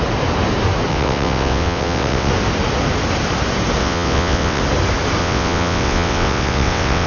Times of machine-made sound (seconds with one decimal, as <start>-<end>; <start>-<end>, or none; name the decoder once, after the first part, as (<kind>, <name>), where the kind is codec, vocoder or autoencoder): 0.9-2.3 (vocoder, WaveNeXt); 3.8-4.6; 5.2-7.1